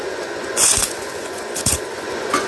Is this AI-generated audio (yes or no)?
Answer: yes